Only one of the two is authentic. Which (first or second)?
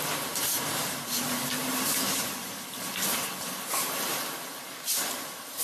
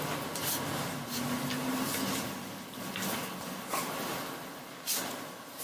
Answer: second